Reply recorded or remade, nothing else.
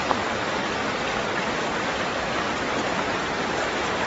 recorded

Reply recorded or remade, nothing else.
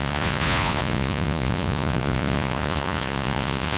remade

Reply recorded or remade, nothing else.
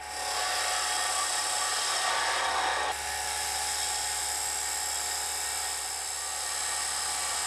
recorded